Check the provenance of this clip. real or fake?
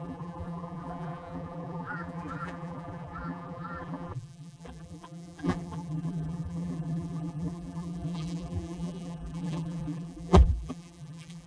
fake